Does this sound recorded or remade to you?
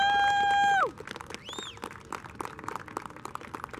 recorded